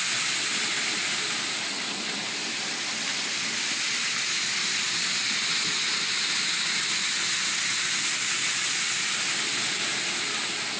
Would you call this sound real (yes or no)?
yes